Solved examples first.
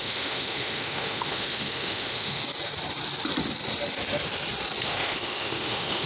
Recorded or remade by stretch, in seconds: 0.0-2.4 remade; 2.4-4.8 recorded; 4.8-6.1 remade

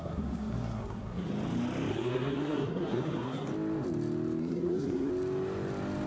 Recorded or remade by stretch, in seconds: 0.0-1.3 remade; 1.3-1.9 recorded; 1.9-3.5 remade; 3.5-4.4 recorded; 4.4-5.1 remade; 5.1-6.1 recorded

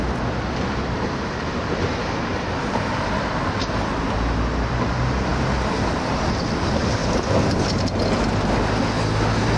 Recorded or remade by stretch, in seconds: 0.0-9.6 recorded